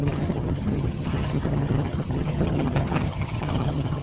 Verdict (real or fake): fake